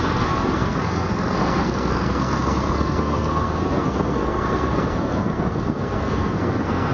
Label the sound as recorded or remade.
remade